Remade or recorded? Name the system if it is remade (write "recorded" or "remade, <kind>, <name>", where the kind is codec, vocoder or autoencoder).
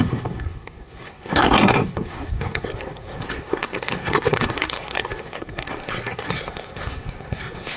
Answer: remade, codec, SNAC